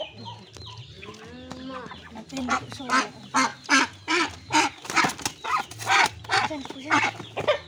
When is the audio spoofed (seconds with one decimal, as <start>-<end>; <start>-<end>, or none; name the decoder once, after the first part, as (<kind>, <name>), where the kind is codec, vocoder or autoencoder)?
none